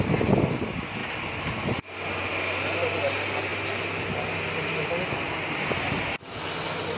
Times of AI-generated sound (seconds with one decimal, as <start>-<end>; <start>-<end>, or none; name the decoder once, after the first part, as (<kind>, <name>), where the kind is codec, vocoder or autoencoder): none